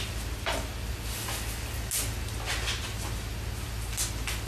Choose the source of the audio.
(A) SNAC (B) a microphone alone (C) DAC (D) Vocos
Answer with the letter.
B